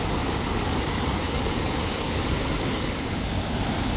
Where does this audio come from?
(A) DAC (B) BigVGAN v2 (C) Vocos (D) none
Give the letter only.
A